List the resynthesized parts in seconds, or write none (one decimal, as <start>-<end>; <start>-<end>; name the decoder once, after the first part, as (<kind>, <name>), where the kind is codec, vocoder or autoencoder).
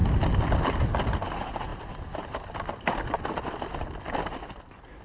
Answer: none